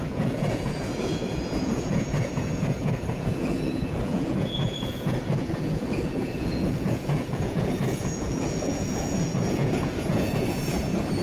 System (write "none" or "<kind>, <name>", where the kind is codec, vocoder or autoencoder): vocoder, Vocos